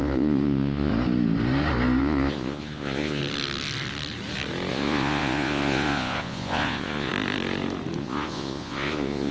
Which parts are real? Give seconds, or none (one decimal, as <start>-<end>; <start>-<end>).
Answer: 0.9-2.0; 3.2-4.7; 7.1-8.0